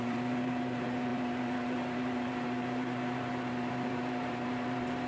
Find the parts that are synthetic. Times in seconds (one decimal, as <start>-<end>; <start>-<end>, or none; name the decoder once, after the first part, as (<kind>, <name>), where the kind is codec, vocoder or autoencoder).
0.0-5.1 (vocoder, BigVGAN v2)